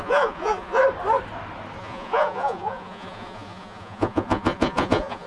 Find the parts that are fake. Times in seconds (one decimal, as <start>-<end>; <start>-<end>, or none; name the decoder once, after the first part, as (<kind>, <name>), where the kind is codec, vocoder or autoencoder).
0.0-0.8 (vocoder, Vocos); 1.8-5.3